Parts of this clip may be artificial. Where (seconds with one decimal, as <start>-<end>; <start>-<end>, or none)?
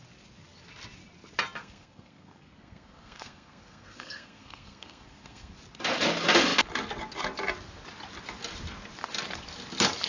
1.6-5.5